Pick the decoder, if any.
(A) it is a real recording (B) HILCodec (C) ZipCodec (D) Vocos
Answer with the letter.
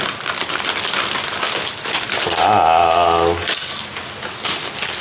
A